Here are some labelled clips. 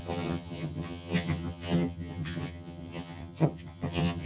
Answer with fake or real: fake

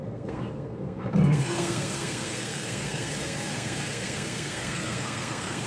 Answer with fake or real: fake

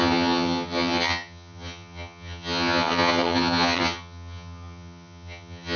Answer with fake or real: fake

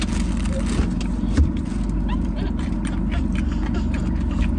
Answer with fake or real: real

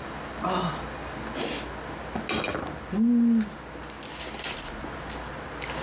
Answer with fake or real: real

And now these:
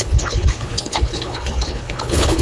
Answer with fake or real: fake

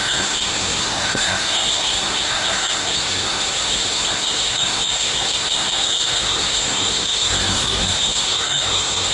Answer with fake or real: fake